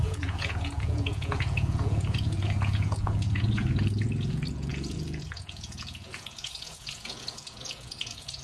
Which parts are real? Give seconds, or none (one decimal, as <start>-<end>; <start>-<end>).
none

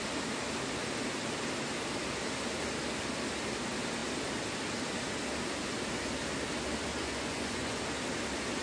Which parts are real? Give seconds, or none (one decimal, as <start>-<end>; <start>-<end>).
0.0-6.9; 7.8-8.6

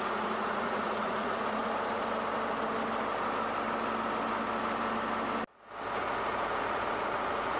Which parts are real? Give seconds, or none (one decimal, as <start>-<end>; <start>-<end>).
1.6-6.0

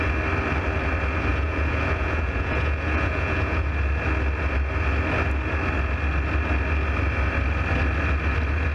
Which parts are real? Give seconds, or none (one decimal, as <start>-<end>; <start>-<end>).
0.0-1.3; 3.7-8.7

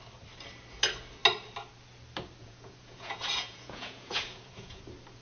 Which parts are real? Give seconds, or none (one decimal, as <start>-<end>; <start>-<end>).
0.0-2.4; 4.8-5.2

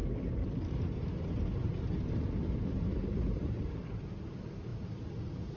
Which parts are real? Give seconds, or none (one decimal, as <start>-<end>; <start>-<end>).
0.0-5.6

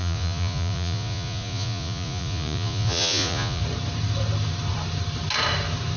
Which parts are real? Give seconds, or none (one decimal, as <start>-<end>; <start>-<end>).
3.6-6.0

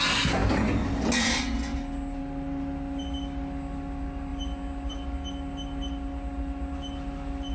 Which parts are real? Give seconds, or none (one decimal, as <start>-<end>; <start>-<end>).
0.0-7.5